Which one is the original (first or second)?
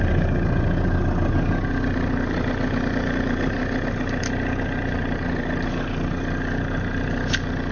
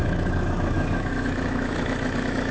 first